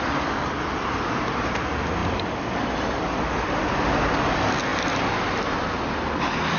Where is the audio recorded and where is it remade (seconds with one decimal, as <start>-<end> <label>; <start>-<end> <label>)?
0.0-6.6 recorded